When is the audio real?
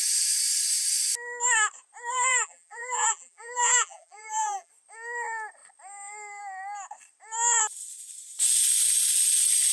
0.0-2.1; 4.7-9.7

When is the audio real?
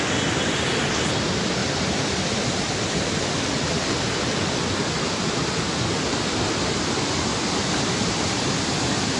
0.0-1.6; 6.7-7.3